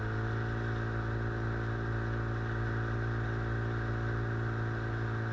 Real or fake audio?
real